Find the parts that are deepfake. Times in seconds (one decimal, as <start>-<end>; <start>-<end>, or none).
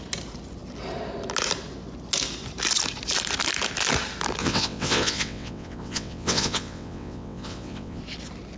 4.4-8.0